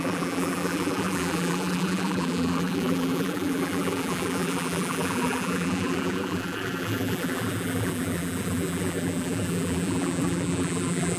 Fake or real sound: fake